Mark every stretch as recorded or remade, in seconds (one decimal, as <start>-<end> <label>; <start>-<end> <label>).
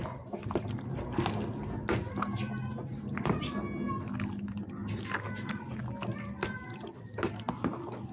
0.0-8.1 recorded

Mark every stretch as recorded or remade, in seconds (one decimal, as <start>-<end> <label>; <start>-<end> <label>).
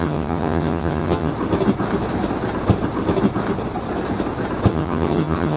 0.0-1.3 remade; 1.3-4.7 recorded; 4.7-5.6 remade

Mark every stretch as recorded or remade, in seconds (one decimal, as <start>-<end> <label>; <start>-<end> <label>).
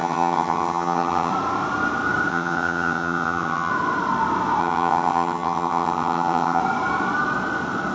0.0-1.3 remade; 1.3-2.3 recorded; 2.3-3.7 remade; 3.7-4.6 recorded; 4.6-6.6 remade; 6.6-7.9 recorded